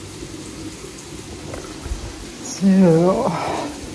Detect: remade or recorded recorded